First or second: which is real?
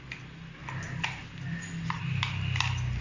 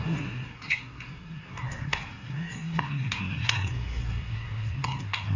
first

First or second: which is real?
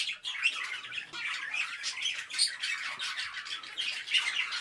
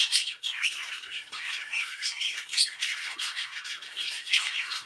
first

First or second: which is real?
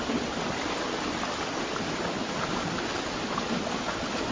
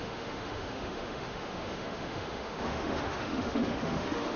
first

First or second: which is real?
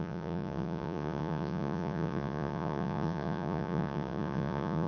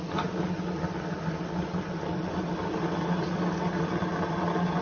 second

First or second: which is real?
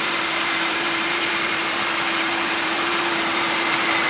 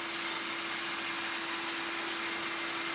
second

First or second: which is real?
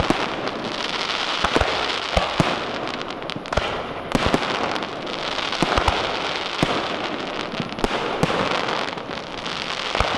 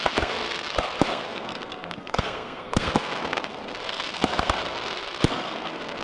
first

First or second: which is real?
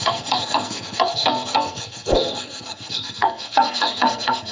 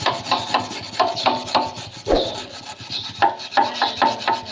second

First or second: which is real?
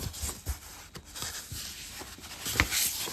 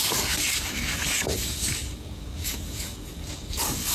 first